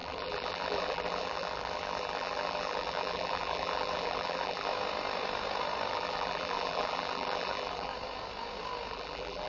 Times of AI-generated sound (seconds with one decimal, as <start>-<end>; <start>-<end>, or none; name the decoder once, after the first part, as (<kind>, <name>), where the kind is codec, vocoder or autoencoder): 0.0-4.7 (vocoder, BigVGAN v2); 5.9-7.9; 8.9-9.5